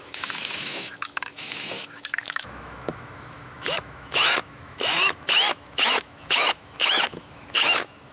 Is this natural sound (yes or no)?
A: no